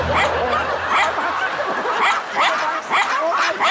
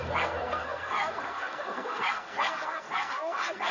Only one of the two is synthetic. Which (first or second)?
second